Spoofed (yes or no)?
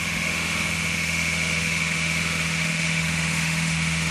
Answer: yes